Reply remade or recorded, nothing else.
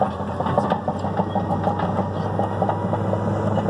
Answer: recorded